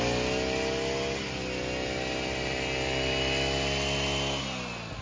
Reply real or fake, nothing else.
real